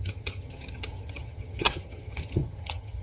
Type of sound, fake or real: fake